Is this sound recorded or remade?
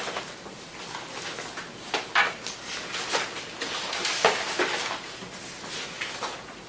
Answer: recorded